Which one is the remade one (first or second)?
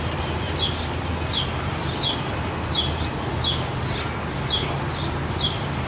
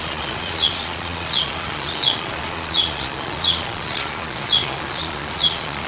second